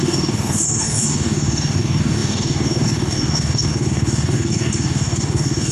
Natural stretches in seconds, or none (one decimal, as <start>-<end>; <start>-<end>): none